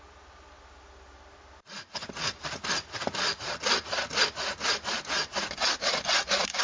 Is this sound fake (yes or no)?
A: no